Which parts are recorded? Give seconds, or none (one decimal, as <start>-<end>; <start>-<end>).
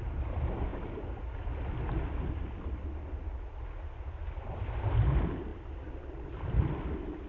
0.0-7.3